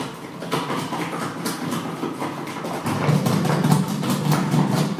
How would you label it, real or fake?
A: real